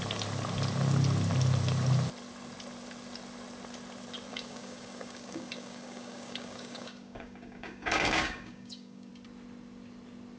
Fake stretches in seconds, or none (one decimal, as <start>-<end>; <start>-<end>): 4.3-9.1